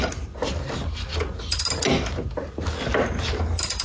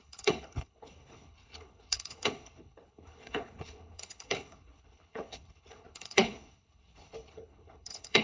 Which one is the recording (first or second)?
first